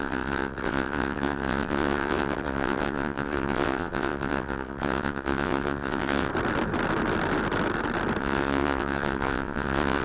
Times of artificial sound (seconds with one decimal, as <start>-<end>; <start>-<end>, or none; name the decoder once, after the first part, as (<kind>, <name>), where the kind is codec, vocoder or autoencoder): 0.0-6.3 (vocoder, WaveNeXt); 8.2-10.0